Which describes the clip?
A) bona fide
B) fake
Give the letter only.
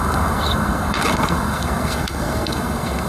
B